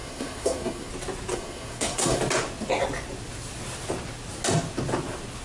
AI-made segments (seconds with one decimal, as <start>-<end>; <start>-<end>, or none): 0.0-0.9; 1.3-2.2